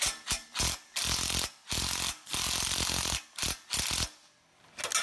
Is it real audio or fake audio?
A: real